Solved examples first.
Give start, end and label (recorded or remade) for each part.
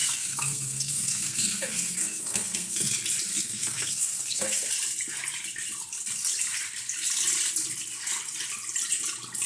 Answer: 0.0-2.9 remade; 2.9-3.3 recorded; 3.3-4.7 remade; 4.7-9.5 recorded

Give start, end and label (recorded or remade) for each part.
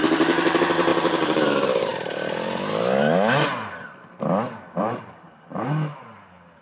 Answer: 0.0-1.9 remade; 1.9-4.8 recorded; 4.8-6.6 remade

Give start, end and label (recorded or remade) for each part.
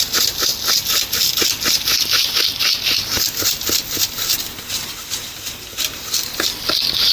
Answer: 0.0-7.1 recorded